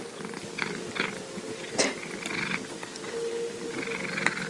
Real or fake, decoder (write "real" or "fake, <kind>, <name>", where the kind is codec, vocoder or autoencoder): real